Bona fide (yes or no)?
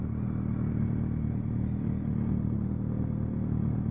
yes